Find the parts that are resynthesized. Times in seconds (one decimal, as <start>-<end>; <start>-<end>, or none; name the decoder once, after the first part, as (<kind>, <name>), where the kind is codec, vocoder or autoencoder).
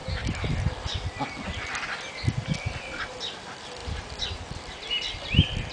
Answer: 3.8-4.9 (vocoder, BigVGAN v2)